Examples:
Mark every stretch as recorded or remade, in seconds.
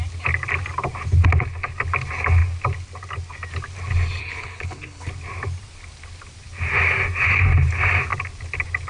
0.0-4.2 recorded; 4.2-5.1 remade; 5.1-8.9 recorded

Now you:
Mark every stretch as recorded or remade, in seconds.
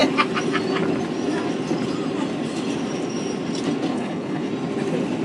0.0-3.9 recorded; 3.9-4.5 remade; 4.5-5.2 recorded